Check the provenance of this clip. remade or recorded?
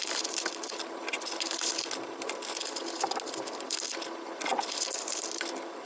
recorded